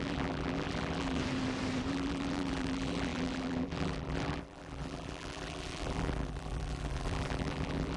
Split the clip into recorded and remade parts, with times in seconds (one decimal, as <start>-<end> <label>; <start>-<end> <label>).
0.0-1.2 remade; 1.2-1.9 recorded; 1.9-8.0 remade